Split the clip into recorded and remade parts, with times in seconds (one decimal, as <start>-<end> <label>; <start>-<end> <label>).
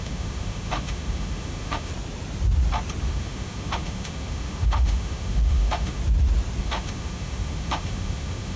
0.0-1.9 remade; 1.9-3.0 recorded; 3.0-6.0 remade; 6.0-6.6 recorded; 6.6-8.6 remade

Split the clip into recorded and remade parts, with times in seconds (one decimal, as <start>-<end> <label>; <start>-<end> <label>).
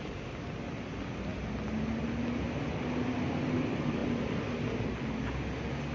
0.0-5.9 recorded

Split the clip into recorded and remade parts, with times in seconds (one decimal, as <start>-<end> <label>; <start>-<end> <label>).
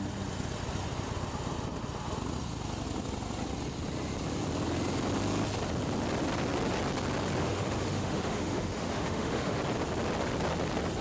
0.0-7.4 recorded; 7.4-9.6 remade; 9.6-11.0 recorded